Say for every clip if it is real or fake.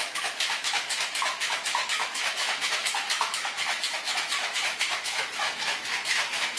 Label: fake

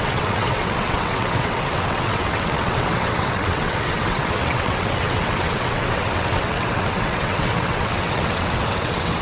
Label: fake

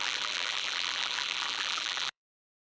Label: fake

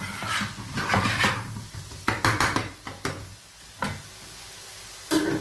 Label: real